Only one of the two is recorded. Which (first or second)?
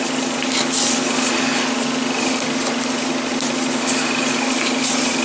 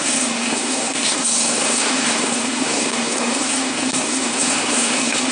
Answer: first